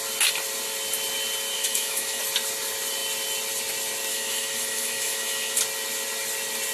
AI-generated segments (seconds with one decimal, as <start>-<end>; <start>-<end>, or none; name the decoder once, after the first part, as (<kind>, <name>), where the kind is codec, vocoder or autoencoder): 1.5-2.2 (autoencoder, DAC-VAE); 4.1-5.6